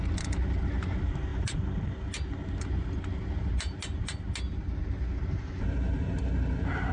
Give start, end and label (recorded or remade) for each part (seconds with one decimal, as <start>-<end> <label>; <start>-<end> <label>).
0.0-6.9 recorded